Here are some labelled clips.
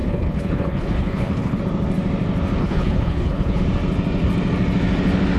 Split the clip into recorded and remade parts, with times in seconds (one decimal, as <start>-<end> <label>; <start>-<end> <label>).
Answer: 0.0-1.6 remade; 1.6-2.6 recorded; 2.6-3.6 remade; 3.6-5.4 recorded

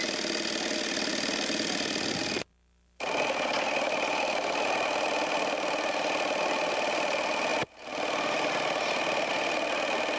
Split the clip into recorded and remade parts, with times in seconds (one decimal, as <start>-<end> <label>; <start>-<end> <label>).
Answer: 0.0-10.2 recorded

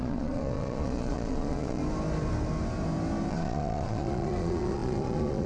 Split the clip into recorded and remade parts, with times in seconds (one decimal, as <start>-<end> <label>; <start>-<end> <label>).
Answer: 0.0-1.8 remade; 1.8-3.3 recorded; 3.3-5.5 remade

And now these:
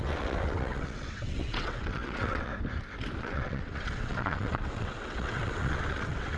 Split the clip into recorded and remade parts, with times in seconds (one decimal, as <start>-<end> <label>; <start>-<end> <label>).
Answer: 0.0-2.5 remade; 2.5-3.2 recorded; 3.2-6.4 remade

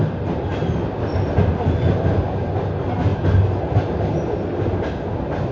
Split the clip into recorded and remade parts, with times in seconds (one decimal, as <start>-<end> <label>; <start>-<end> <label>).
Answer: 0.0-0.5 recorded; 0.5-1.9 remade; 1.9-5.5 recorded

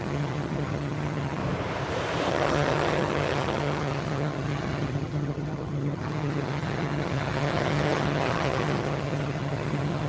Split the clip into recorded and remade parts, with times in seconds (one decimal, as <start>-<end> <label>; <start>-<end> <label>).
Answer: 0.0-1.4 remade; 1.4-2.3 recorded; 2.3-10.1 remade